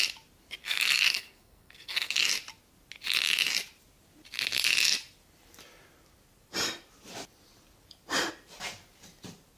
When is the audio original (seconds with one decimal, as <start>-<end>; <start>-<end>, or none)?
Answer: 0.0-0.6; 2.2-9.6